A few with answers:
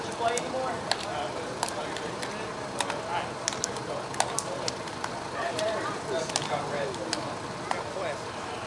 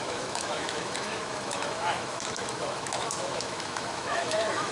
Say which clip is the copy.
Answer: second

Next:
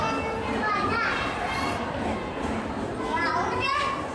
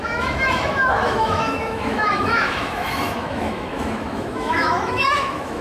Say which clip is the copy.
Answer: second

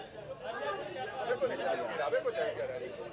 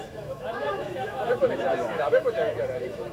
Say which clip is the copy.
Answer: second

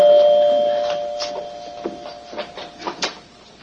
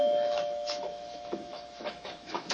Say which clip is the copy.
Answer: second